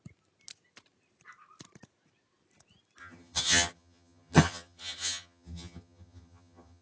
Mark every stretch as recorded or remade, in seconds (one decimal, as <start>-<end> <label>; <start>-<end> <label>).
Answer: 0.0-3.0 recorded; 3.0-6.8 remade